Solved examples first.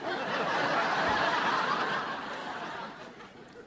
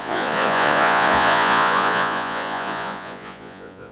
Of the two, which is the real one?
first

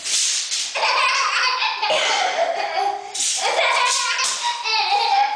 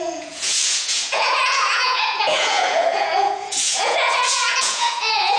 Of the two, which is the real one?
first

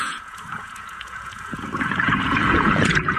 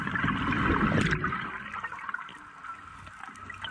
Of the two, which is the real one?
second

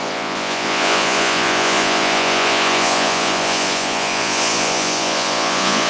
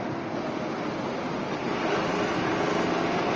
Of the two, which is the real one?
second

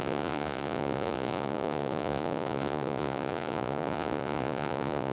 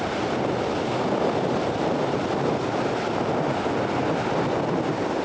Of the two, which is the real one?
second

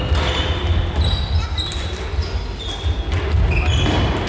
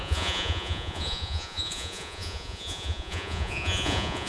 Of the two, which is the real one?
first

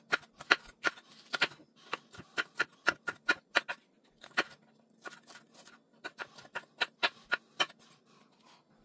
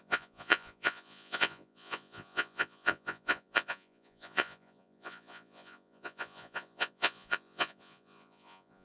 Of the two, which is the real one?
first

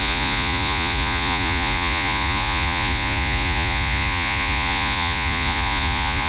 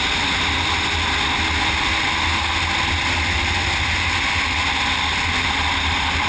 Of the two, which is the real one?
second